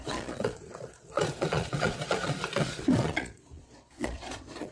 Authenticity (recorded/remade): remade